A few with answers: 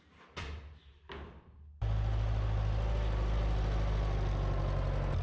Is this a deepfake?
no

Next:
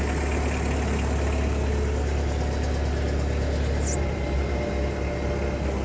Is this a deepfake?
no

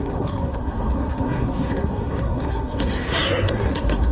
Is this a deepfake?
yes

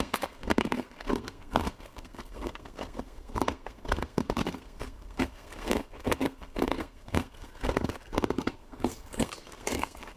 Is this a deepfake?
yes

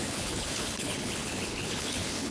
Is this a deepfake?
yes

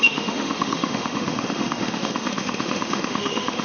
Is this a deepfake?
yes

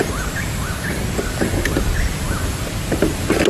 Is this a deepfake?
no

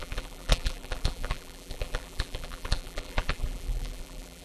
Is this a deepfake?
yes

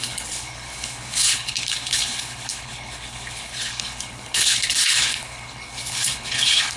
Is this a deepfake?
yes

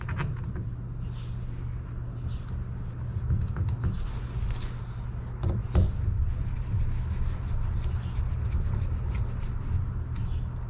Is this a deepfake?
no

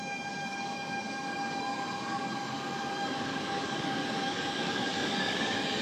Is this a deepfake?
yes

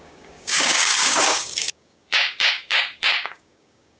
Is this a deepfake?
yes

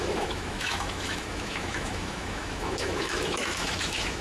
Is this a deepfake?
yes